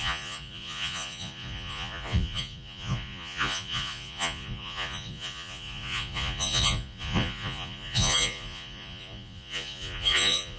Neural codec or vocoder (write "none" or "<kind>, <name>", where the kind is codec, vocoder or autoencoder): vocoder, Vocos